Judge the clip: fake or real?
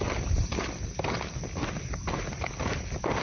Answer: real